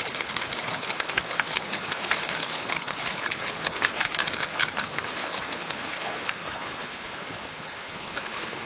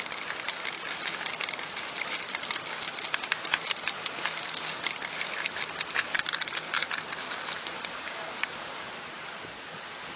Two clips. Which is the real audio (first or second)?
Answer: second